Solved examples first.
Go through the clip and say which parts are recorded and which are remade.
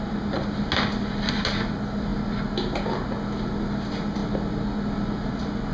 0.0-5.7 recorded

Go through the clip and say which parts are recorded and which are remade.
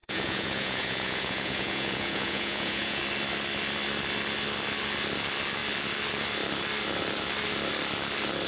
0.0-3.0 remade; 3.0-8.5 recorded